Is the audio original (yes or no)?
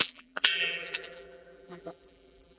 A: no